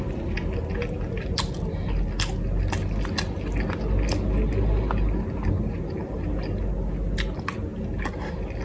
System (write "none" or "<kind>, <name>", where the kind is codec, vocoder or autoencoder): none